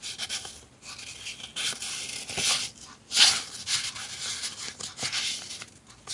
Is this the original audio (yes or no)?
yes